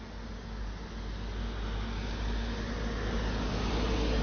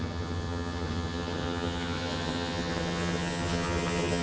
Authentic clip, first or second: first